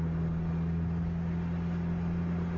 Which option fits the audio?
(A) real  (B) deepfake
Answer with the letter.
A